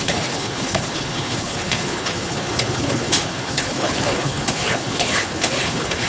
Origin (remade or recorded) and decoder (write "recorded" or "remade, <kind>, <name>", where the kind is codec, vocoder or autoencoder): remade, codec, HILCodec